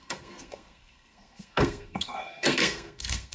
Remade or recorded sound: remade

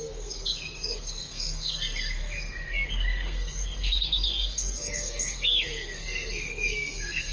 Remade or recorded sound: remade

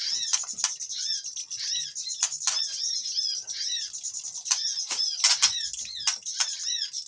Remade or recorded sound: recorded